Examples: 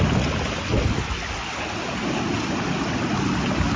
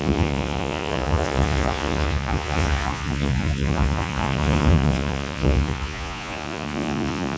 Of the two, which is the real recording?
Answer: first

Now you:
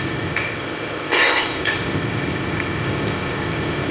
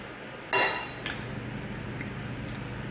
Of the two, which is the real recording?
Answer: second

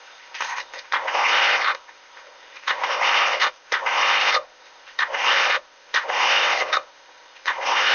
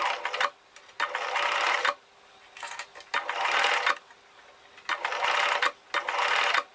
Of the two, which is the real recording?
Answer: second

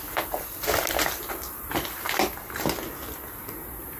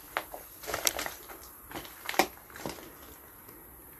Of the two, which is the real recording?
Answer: first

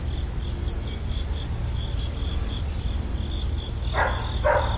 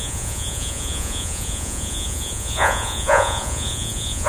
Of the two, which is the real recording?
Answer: first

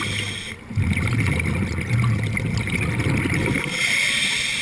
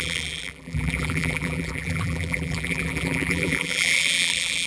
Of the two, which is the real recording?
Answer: first